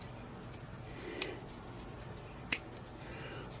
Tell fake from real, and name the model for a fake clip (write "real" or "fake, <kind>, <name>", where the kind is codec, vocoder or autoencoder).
real